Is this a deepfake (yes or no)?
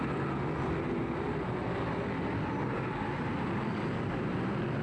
no